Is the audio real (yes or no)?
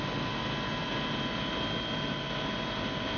yes